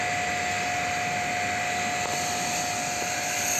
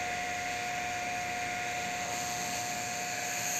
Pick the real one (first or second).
first